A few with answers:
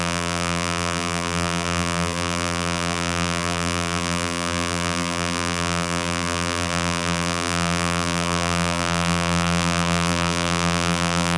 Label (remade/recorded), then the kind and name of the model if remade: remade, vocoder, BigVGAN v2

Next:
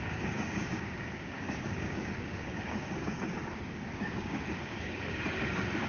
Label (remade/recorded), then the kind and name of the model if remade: remade, codec, DAC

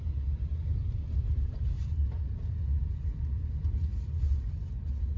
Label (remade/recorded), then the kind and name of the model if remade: recorded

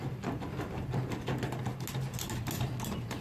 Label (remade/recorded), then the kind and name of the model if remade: recorded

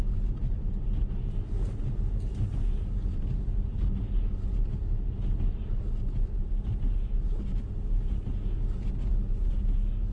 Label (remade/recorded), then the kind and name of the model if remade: recorded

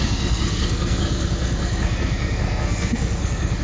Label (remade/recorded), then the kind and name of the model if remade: remade, codec, SNAC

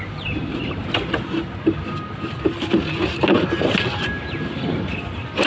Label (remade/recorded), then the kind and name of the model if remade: recorded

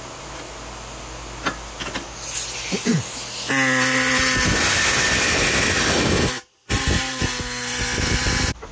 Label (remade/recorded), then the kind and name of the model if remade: recorded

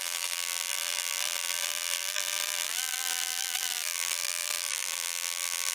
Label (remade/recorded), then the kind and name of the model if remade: remade, vocoder, BigVGAN v2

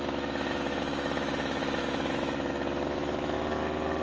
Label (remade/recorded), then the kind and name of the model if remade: remade, autoencoder, DAC-VAE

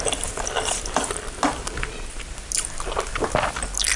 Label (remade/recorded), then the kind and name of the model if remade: recorded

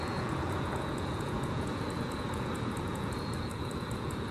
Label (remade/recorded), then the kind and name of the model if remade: remade, vocoder, Vocos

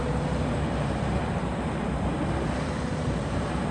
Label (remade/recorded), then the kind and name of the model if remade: remade, vocoder, BigVGAN v2